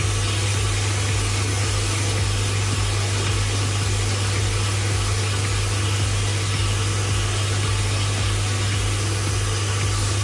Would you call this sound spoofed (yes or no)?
no